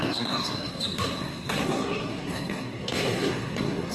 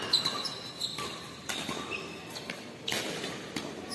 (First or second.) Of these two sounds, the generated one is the first